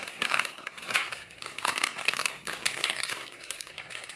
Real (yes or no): no